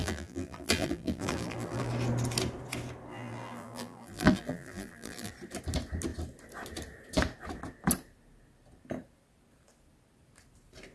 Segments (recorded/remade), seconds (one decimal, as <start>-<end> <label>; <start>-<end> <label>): 0.0-1.9 remade; 1.9-3.1 recorded; 3.1-5.3 remade; 5.3-10.9 recorded